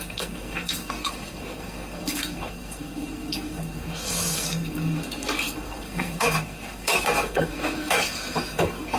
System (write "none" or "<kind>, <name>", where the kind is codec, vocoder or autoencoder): codec, SNAC